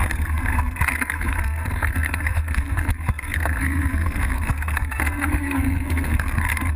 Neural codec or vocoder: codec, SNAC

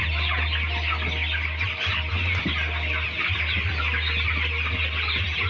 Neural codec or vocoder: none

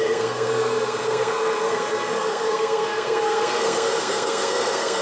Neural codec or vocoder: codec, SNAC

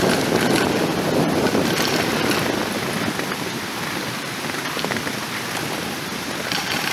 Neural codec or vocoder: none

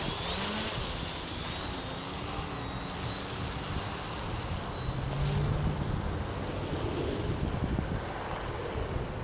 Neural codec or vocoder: none